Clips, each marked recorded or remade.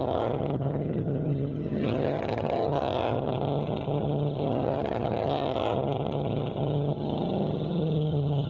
remade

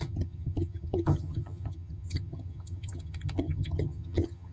remade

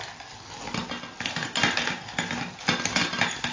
recorded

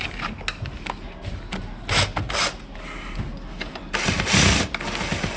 recorded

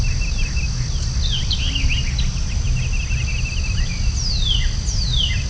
recorded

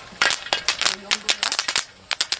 recorded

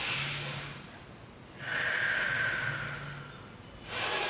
recorded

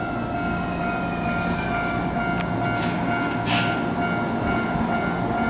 recorded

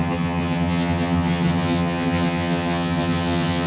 remade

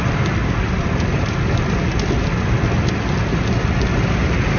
recorded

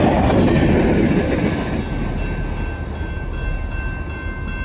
recorded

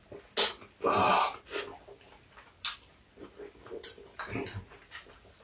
recorded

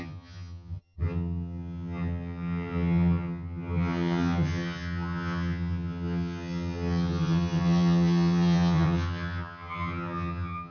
remade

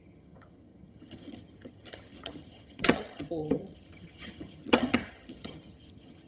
remade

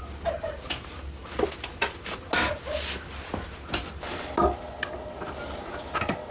recorded